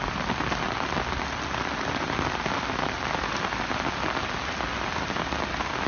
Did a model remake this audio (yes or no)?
no